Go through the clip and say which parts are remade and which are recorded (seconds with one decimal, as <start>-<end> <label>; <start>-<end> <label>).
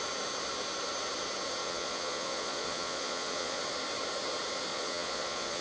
0.0-1.6 recorded; 1.6-3.6 remade; 3.6-4.7 recorded; 4.7-5.6 remade